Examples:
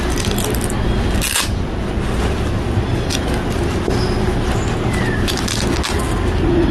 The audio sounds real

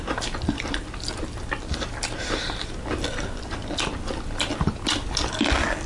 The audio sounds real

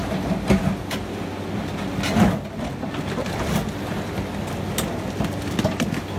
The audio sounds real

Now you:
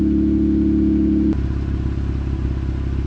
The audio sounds real